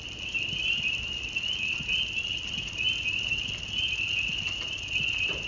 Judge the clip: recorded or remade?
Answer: recorded